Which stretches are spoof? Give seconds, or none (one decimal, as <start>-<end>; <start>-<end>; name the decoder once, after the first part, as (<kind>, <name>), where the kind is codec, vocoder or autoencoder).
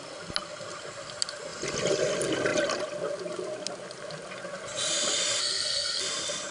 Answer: 5.4-6.0 (codec, SNAC)